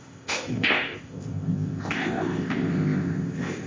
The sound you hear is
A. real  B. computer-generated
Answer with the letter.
B